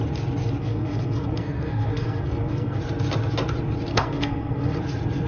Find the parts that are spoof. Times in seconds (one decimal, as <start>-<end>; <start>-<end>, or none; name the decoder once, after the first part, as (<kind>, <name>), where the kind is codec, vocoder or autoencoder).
0.6-2.8 (codec, SNAC); 3.9-4.8